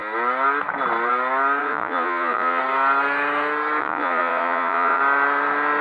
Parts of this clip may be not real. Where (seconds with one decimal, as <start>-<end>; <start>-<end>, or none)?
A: 1.6-2.6; 3.8-5.0